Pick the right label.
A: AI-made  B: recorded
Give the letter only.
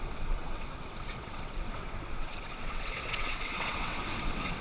A